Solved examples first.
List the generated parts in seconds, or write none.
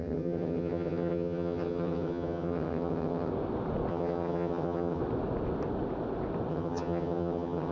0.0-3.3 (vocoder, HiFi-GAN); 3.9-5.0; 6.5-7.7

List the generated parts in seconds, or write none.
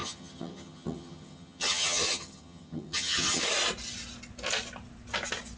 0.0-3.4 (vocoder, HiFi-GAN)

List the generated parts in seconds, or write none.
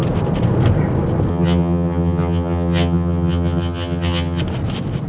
1.3-4.4 (vocoder, HiFi-GAN)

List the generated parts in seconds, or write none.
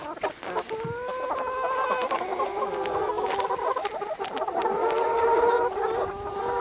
none